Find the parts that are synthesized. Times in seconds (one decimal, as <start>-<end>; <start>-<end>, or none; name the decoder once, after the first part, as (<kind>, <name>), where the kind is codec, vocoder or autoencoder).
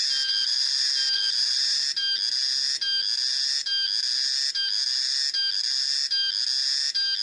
none